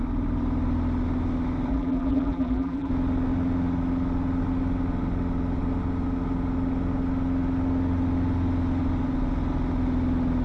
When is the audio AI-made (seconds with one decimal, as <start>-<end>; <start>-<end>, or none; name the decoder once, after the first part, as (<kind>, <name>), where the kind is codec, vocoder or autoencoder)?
1.7-2.9 (vocoder, BigVGAN v2)